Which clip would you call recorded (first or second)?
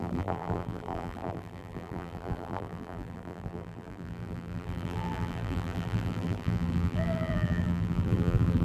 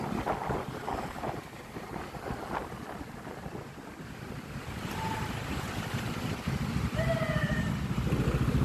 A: second